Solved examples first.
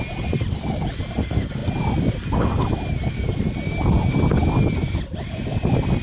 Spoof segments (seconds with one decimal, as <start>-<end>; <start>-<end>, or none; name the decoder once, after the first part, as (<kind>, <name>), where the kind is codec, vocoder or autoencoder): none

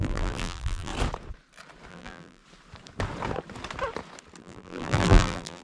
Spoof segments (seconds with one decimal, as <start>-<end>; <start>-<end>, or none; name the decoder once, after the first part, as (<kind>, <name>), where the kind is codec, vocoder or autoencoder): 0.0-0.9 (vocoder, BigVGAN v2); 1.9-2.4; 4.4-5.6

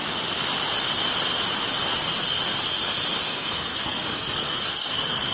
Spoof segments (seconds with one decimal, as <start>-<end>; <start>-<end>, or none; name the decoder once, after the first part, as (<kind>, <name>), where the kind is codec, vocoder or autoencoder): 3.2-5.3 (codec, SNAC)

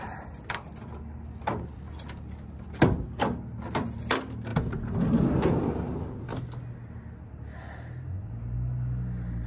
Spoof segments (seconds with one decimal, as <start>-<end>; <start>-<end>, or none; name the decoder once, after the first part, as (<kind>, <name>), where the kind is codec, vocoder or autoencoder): none

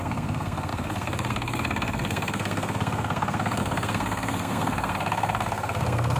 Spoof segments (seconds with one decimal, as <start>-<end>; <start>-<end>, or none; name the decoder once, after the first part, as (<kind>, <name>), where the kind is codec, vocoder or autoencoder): 0.0-6.2 (codec, SNAC)